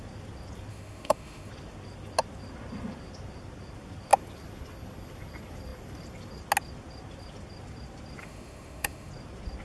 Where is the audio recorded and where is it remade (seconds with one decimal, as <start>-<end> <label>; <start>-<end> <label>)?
0.0-0.7 recorded; 0.7-1.5 remade; 1.5-8.2 recorded; 8.2-9.1 remade; 9.1-9.6 recorded

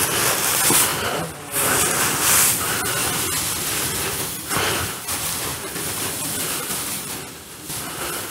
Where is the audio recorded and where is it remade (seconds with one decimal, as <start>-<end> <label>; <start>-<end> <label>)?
0.0-5.5 recorded; 5.5-7.1 remade; 7.1-8.3 recorded

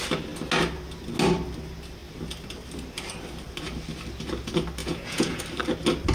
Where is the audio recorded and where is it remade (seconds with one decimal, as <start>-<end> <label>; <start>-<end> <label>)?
0.0-4.8 recorded; 4.8-5.4 remade; 5.4-6.1 recorded

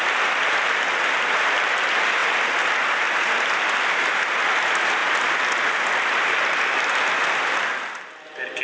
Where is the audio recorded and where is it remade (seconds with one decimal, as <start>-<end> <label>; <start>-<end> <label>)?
0.0-8.6 recorded